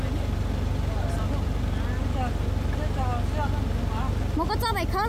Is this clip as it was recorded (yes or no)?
yes